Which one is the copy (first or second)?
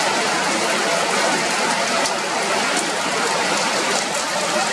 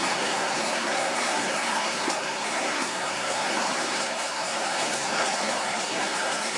second